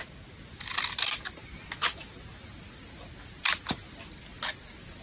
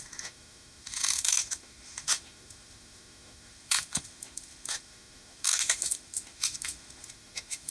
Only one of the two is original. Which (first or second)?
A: first